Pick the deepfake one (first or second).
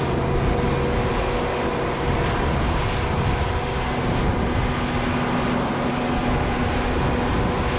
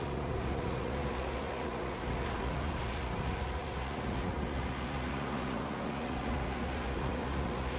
second